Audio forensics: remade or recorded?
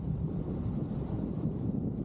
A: recorded